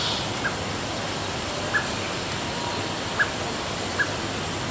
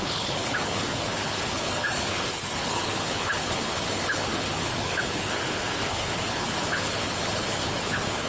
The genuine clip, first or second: first